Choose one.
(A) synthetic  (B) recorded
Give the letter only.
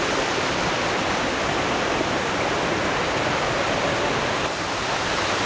B